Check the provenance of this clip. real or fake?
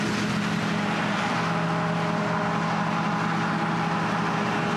real